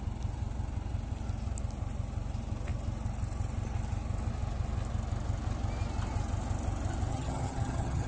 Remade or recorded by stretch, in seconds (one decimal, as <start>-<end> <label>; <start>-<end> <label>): 0.0-7.1 recorded; 7.1-8.1 remade